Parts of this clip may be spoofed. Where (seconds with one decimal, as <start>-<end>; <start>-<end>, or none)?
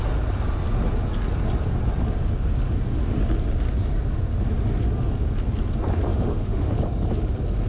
6.1-6.7